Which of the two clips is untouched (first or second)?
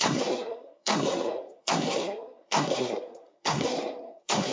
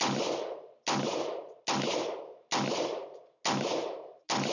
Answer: second